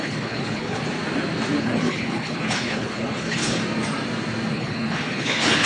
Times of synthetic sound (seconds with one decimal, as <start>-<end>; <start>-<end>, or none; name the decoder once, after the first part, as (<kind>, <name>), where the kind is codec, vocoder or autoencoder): 0.0-0.8 (codec, HILCodec); 1.6-3.6; 4.5-5.7